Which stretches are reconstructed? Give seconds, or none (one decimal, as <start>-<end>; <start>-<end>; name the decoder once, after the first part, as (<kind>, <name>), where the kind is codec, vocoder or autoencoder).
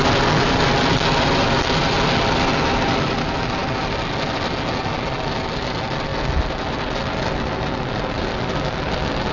none